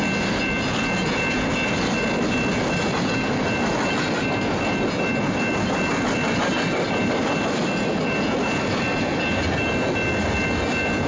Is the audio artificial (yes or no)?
no